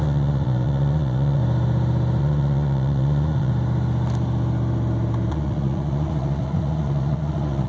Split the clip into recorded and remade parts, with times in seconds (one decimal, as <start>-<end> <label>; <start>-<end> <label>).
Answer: 0.0-1.4 remade; 1.4-2.2 recorded; 2.2-3.5 remade; 3.5-5.3 recorded; 5.3-7.7 remade